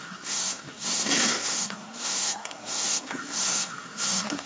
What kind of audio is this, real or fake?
fake